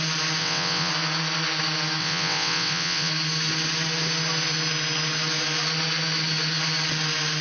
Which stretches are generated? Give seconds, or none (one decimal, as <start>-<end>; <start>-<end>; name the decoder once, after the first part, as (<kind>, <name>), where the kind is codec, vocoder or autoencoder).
0.4-0.9 (vocoder, WaveNeXt); 2.0-3.1